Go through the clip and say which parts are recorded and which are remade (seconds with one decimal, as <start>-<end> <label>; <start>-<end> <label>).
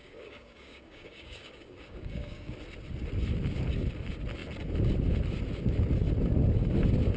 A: 0.0-2.5 remade; 2.5-7.2 recorded